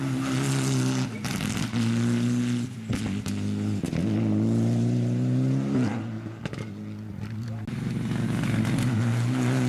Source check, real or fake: real